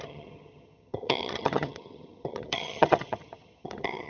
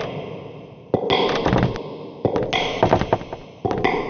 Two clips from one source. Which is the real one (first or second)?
second